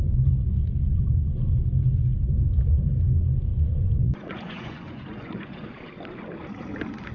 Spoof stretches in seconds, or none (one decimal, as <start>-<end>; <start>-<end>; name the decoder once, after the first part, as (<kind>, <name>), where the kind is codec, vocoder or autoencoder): 0.6-1.4 (vocoder, Vocos); 3.5-5.9